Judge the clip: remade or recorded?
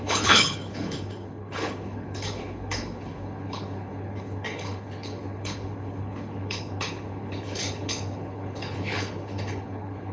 remade